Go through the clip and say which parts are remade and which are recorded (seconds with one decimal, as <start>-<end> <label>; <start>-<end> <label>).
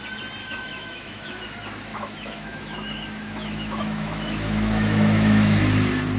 0.0-0.4 recorded; 0.4-1.4 remade; 1.4-1.9 recorded; 1.9-5.6 remade; 5.6-6.2 recorded